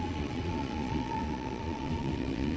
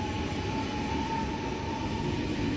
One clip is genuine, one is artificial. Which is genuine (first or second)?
second